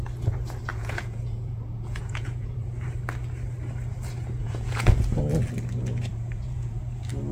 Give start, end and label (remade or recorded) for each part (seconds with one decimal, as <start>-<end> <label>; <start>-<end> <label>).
0.0-0.7 recorded; 0.7-2.6 remade; 2.6-4.4 recorded; 4.4-5.2 remade; 5.2-6.1 recorded; 6.1-6.8 remade; 6.8-7.3 recorded

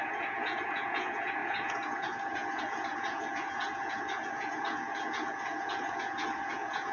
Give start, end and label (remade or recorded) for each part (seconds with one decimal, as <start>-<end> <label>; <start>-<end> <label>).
0.0-6.9 remade

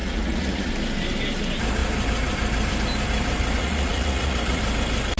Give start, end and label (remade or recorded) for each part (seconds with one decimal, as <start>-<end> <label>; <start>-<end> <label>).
0.0-0.7 remade; 0.7-3.6 recorded; 3.6-4.6 remade; 4.6-5.2 recorded

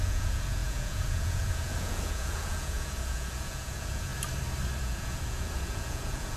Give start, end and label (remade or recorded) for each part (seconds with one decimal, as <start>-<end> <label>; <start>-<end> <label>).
0.0-4.1 remade; 4.1-4.8 recorded; 4.8-6.4 remade

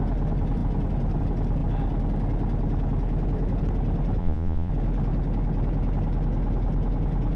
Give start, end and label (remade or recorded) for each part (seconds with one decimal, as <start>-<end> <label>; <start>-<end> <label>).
0.0-4.2 recorded; 4.2-4.7 remade; 4.7-7.4 recorded

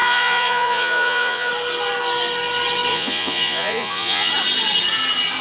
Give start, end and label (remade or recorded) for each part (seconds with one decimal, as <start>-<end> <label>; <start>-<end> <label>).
0.0-1.5 remade; 1.5-2.9 recorded; 2.9-4.3 remade; 4.3-5.4 recorded

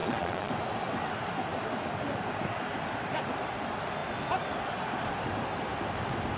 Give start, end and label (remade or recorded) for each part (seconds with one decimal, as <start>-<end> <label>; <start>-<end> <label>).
0.0-0.5 remade; 0.5-6.4 recorded

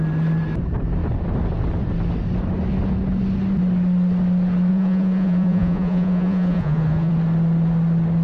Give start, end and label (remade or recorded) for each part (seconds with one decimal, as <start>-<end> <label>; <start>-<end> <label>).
0.0-4.7 recorded; 4.7-7.1 remade; 7.1-8.2 recorded